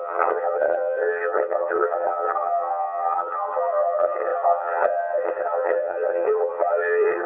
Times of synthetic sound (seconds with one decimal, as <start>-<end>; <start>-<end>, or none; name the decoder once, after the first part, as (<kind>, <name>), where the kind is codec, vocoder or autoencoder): 0.0-7.3 (vocoder, HiFi-GAN)